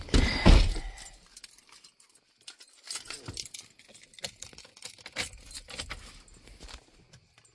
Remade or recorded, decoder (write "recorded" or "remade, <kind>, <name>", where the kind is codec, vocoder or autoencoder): recorded